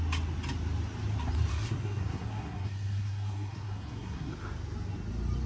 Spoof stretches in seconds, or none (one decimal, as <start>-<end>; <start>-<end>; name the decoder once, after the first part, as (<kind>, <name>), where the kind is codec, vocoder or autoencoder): 1.5-4.3 (codec, SNAC)